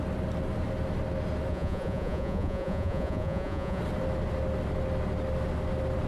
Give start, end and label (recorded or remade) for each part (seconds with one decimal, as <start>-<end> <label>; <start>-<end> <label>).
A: 0.0-1.5 recorded; 1.5-3.8 remade; 3.8-6.1 recorded